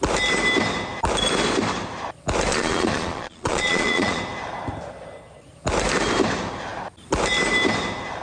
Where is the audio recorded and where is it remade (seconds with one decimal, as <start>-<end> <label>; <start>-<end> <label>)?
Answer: 0.0-2.5 recorded; 2.5-4.2 remade; 4.2-8.2 recorded